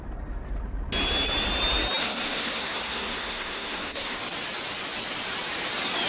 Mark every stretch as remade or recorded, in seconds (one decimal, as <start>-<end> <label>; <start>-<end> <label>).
0.0-2.0 recorded; 2.0-4.2 remade; 4.2-6.1 recorded